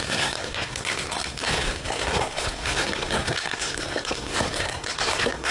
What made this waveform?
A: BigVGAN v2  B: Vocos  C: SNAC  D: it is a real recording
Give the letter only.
C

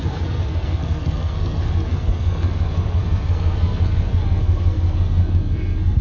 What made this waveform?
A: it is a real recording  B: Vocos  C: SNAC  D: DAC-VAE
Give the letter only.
C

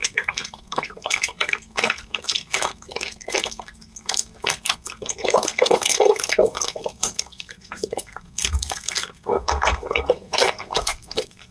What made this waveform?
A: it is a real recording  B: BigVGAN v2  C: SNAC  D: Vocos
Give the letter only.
C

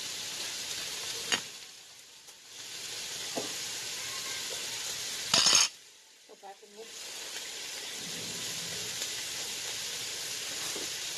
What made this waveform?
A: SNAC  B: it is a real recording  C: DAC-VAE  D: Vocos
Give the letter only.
B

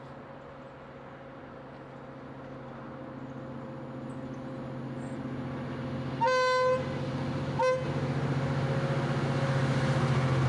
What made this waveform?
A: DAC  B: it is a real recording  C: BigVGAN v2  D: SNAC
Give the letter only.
B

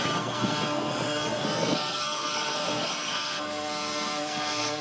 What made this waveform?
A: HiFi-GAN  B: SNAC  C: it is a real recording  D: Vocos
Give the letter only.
B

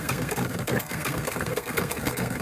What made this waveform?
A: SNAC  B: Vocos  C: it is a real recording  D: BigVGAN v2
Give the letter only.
A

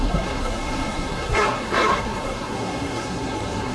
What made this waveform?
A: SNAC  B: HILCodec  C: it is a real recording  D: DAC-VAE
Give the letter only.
A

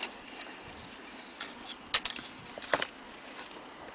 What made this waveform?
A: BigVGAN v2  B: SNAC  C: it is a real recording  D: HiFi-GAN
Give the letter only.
C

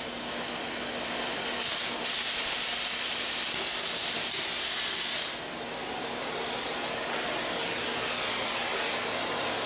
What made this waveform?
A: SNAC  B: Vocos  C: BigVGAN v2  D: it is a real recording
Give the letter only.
D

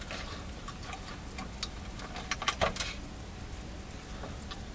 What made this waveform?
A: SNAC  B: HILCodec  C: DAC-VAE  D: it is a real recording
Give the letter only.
D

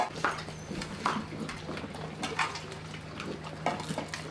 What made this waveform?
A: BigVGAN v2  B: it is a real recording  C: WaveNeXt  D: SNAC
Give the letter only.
B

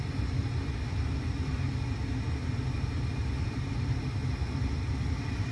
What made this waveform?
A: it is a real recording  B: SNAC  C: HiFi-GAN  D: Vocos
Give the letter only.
A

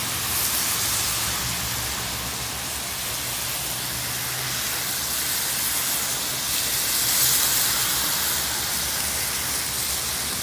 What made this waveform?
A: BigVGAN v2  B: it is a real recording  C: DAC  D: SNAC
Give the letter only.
B